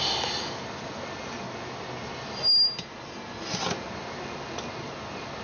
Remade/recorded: recorded